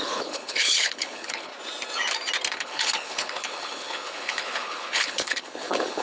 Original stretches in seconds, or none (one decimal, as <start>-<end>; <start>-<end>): 1.5-2.5